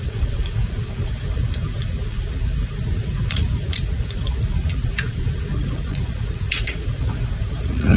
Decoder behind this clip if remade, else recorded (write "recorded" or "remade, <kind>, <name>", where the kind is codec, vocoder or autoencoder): remade, vocoder, Vocos